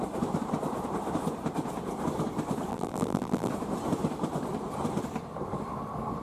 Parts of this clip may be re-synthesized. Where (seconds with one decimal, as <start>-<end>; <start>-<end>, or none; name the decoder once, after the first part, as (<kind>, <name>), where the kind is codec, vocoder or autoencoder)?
2.7-3.5 (vocoder, BigVGAN v2)